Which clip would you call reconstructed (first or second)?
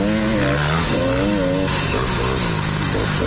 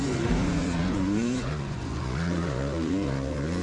second